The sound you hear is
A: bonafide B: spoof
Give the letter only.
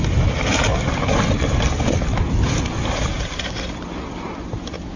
A